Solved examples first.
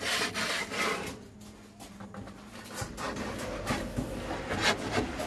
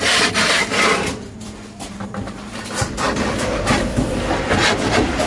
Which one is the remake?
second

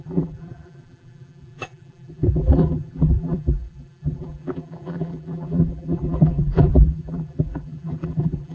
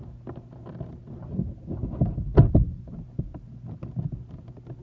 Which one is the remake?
first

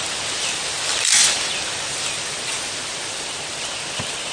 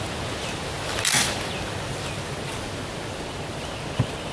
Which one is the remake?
first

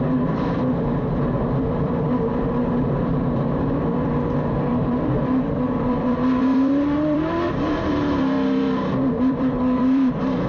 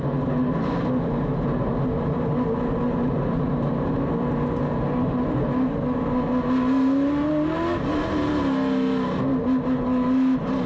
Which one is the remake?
first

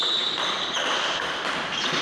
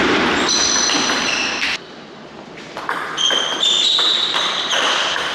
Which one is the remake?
second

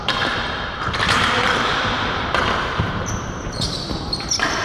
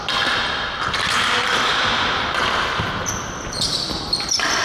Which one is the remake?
first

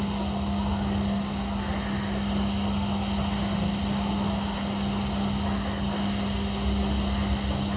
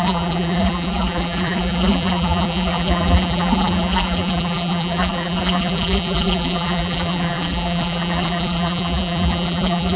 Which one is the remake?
second